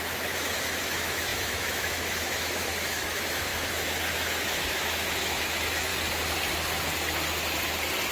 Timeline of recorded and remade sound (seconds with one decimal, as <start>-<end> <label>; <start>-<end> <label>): 0.0-5.9 remade; 5.9-8.1 recorded